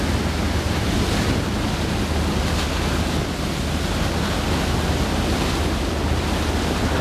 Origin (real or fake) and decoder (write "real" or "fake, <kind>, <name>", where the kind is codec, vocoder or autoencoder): real